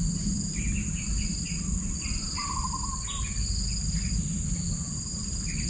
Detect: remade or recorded recorded